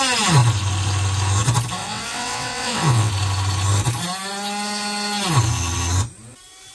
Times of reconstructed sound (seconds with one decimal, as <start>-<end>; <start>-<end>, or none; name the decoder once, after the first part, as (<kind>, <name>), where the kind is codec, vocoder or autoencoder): 1.8-3.1 (vocoder, WaveNeXt)